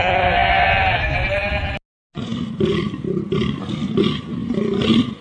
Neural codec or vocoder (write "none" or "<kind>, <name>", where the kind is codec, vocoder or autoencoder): none